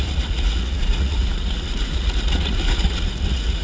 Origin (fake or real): fake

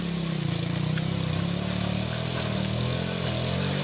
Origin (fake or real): real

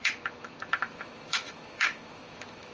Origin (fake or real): fake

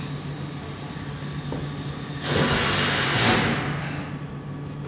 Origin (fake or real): real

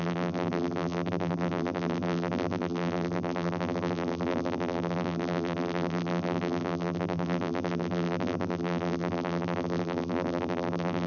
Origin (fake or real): fake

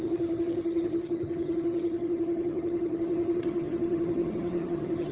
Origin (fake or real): fake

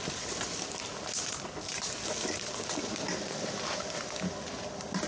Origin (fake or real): real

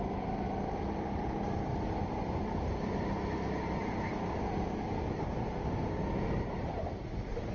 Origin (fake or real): real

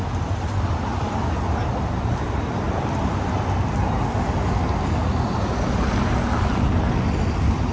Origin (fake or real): real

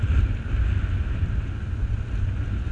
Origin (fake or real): real